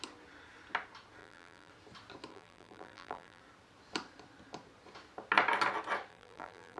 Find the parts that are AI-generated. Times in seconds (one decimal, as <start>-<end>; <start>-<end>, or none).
1.2-1.7; 2.3-3.4; 6.1-6.8